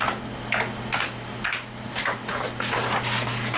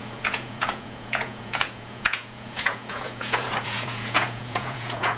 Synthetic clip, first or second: second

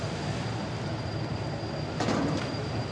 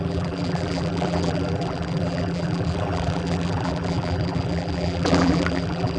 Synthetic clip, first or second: second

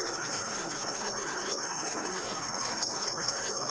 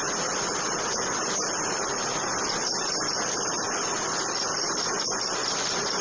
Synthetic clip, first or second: first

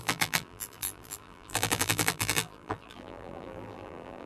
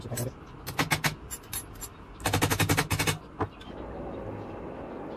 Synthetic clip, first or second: first